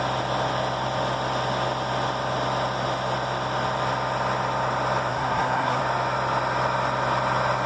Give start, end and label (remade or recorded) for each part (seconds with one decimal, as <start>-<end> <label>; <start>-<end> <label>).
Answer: 0.0-5.1 recorded; 5.1-5.8 remade; 5.8-7.7 recorded